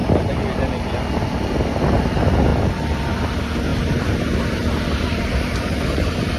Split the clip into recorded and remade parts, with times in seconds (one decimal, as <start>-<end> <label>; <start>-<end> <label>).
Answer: 0.0-2.5 recorded; 2.5-3.0 remade; 3.0-3.7 recorded; 3.7-4.8 remade; 4.8-6.4 recorded